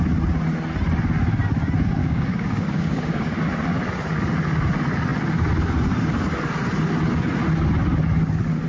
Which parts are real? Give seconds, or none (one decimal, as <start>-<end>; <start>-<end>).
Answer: 0.0-2.0; 3.4-8.7